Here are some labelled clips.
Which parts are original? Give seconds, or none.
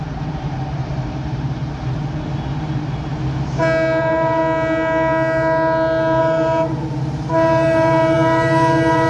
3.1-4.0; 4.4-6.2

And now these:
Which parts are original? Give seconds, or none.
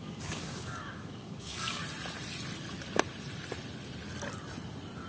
1.8-5.1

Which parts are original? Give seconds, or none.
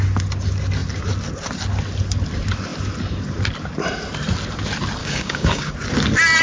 0.0-5.0; 5.7-6.4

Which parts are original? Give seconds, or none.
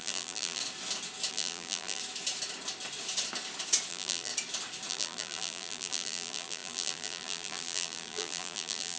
0.6-1.3; 2.0-3.9; 4.3-4.9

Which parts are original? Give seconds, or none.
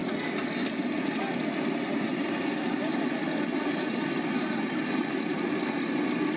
0.0-6.4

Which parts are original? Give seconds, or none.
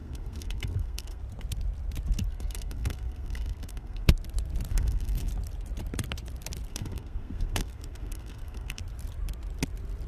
1.2-2.3; 4.1-4.7; 5.3-6.7; 8.8-10.1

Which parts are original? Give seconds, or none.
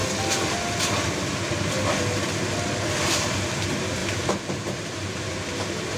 0.0-4.0; 5.2-6.0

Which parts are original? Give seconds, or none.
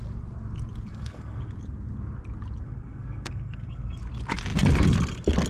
0.0-0.9; 1.4-2.6; 4.0-5.5